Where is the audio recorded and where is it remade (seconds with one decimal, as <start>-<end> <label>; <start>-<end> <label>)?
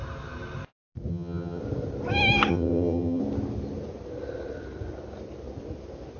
0.0-1.1 recorded; 1.1-1.6 remade; 1.6-2.5 recorded; 2.5-3.2 remade; 3.2-6.2 recorded